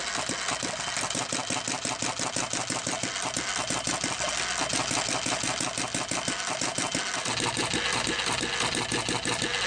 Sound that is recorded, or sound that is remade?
recorded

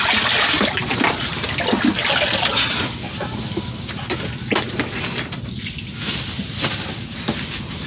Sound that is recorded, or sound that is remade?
recorded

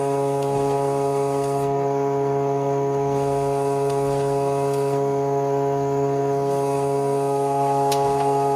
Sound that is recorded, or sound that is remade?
remade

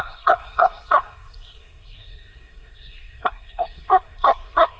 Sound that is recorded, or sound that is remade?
remade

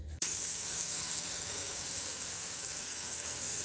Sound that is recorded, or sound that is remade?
remade